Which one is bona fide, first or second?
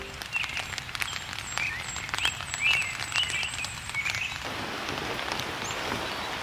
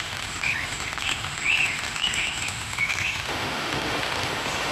first